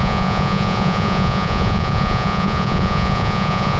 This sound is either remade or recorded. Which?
remade